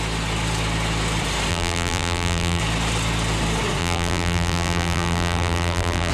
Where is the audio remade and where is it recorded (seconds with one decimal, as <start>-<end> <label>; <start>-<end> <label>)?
0.0-1.5 recorded; 1.5-2.6 remade; 2.6-3.8 recorded; 3.8-6.1 remade